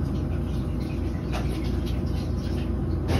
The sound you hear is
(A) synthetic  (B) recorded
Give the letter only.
B